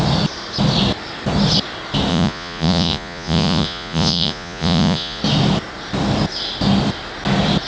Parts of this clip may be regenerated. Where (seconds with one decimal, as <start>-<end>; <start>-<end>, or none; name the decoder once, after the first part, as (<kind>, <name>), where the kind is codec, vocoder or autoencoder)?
2.1-5.2 (vocoder, Vocos)